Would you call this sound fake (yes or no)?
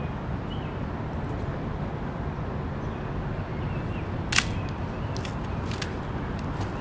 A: no